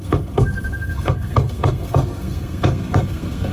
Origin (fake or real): fake